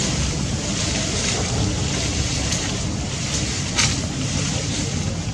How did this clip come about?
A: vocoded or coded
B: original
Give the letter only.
A